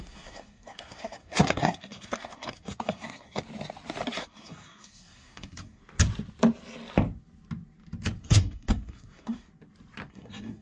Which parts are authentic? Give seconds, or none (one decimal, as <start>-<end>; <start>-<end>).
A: 3.4-4.2; 5.8-8.2; 9.5-10.1